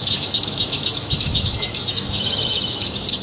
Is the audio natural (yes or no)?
no